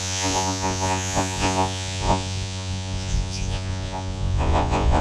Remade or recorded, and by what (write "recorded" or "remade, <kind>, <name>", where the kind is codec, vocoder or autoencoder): remade, vocoder, Vocos